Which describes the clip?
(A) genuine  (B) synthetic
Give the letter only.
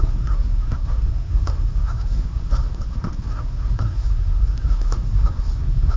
B